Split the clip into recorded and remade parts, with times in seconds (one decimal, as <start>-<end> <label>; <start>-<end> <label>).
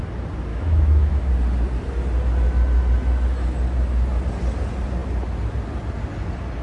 0.0-0.5 recorded; 0.5-1.3 remade; 1.3-6.6 recorded